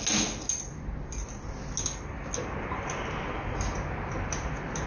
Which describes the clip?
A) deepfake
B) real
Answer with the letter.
B